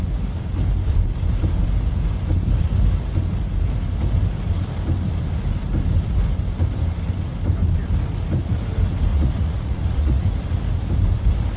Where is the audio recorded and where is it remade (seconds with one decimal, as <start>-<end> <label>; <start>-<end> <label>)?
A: 0.0-9.1 recorded; 9.1-10.3 remade; 10.3-11.6 recorded